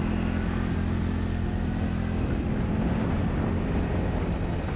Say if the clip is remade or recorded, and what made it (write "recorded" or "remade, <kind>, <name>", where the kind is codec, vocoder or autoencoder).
recorded